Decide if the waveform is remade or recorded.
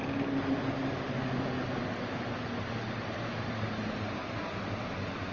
recorded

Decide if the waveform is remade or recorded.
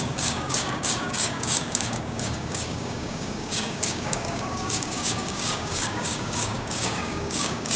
remade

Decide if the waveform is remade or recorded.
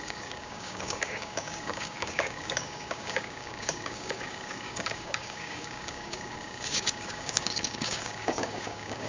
remade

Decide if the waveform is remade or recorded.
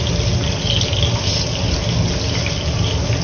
recorded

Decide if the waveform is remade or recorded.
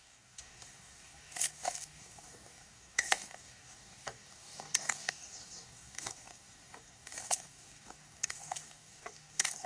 remade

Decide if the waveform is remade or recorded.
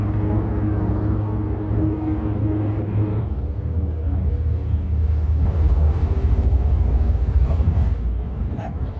remade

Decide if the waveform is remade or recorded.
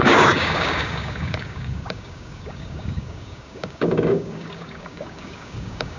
remade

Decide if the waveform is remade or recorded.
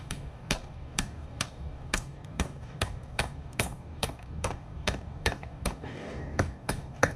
remade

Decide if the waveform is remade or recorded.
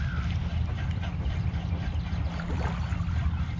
recorded